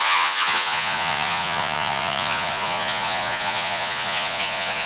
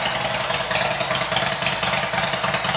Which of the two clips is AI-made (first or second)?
first